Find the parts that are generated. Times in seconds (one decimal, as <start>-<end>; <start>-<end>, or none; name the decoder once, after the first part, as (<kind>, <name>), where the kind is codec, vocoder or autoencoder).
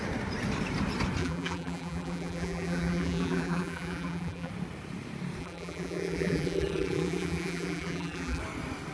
1.2-4.5 (vocoder, BigVGAN v2); 5.4-8.4